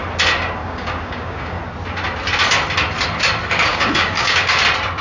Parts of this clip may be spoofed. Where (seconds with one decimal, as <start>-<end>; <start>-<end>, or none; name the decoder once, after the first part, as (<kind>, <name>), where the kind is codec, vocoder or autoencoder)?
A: 0.6-1.6 (codec, DAC); 3.7-4.6